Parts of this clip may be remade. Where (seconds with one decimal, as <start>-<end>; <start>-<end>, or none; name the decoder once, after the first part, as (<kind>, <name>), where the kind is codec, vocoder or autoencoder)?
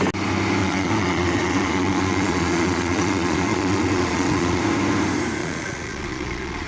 0.6-4.6 (vocoder, Vocos); 5.4-6.7